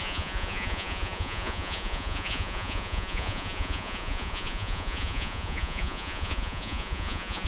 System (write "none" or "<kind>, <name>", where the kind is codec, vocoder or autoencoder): vocoder, Vocos